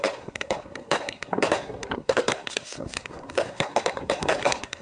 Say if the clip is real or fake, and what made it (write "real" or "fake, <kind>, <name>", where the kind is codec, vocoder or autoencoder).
fake, codec, SNAC